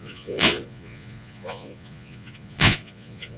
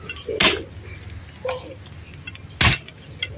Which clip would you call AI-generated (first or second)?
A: first